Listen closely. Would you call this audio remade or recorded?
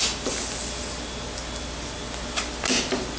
recorded